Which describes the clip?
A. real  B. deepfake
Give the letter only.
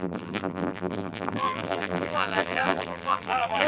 B